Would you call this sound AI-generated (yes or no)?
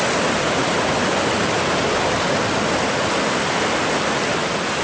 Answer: no